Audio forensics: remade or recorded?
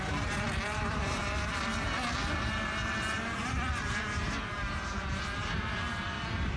remade